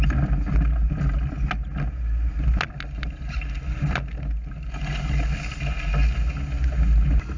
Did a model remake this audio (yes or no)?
no